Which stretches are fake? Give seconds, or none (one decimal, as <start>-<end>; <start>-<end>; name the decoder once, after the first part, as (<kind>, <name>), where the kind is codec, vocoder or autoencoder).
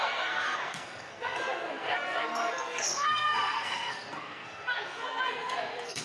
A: 0.0-6.0 (codec, SNAC)